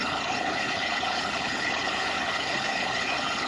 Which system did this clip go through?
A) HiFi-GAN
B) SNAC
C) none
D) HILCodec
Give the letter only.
D